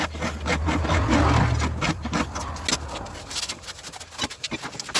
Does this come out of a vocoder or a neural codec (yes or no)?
no